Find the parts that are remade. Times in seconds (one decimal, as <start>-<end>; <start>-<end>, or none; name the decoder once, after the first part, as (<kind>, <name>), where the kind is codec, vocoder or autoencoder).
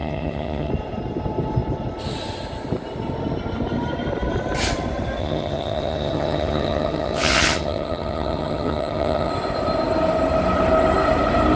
0.0-0.7 (vocoder, HiFi-GAN); 5.2-9.3